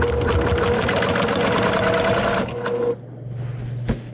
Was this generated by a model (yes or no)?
no